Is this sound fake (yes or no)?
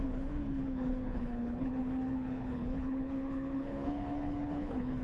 yes